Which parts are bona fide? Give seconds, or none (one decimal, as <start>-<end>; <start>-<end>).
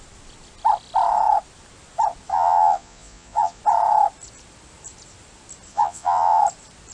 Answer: 0.0-2.3; 3.6-5.7; 6.4-6.9